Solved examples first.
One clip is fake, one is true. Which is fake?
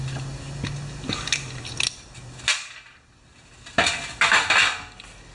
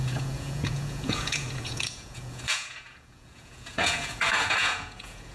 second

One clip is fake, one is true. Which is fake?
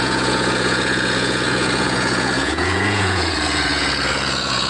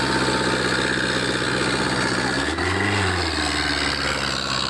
first